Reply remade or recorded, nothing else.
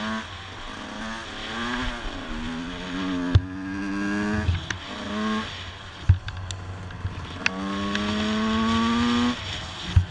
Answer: recorded